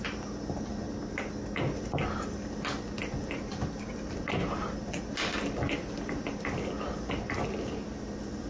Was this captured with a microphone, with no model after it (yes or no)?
yes